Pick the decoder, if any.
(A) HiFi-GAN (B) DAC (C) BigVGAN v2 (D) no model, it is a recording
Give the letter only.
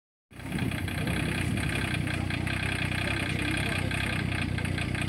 D